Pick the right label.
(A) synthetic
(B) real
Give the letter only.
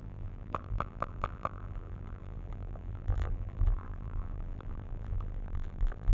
A